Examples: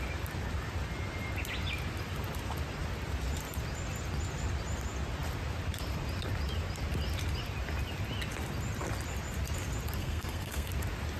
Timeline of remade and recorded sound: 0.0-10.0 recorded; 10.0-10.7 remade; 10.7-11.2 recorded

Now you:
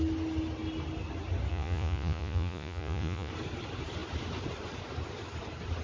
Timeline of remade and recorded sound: 0.0-1.5 recorded; 1.5-3.3 remade; 3.3-5.8 recorded

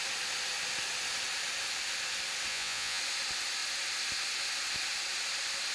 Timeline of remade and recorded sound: 0.0-2.5 recorded; 2.5-3.0 remade; 3.0-5.7 recorded

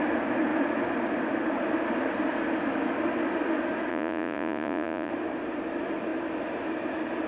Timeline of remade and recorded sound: 0.0-3.9 recorded; 3.9-5.1 remade; 5.1-7.3 recorded